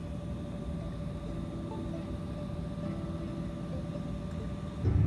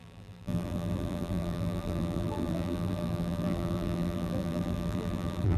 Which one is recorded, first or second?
first